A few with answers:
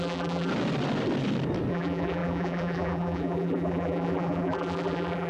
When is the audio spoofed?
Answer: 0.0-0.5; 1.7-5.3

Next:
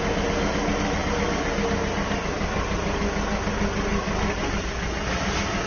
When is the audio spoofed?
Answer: none

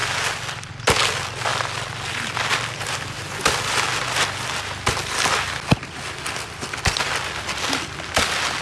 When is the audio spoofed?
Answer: none

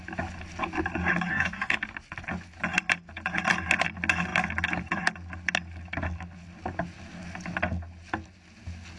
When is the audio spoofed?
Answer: 1.3-1.8